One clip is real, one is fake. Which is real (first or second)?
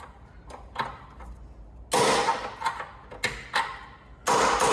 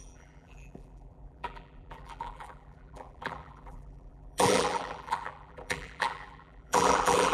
first